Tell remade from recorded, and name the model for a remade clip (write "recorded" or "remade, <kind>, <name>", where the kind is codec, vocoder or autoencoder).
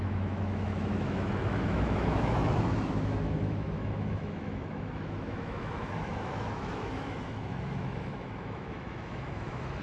remade, autoencoder, DAC-VAE